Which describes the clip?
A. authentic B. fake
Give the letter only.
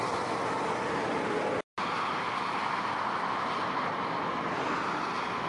A